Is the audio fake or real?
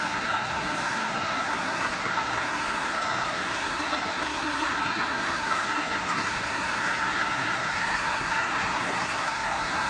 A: fake